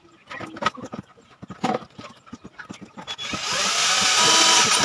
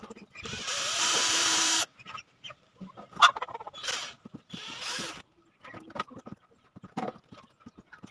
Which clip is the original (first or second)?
first